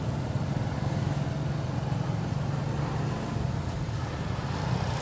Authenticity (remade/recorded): recorded